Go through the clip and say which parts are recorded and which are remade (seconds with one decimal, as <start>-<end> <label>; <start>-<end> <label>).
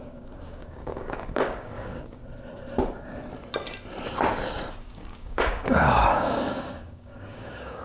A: 0.0-2.2 remade; 2.2-4.7 recorded; 4.7-7.8 remade